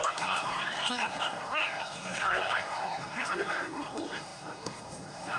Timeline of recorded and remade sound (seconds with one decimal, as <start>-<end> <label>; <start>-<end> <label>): 0.0-5.4 remade